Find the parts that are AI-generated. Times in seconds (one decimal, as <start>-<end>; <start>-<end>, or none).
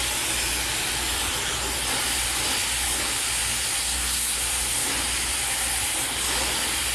3.8-4.4